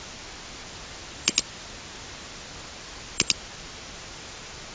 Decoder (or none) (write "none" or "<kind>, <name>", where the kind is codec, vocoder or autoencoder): none